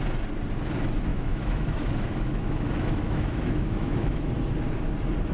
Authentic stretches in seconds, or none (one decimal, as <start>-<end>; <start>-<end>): 0.0-1.1; 4.3-5.3